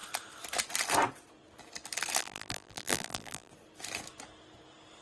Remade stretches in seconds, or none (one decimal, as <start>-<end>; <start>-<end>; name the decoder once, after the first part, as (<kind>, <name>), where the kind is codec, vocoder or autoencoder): 2.2-3.5 (vocoder, BigVGAN v2)